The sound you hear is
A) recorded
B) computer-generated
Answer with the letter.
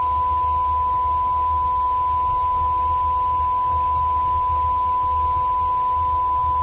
A